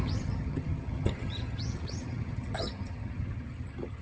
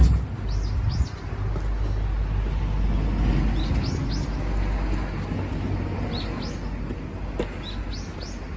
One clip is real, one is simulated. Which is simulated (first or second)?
first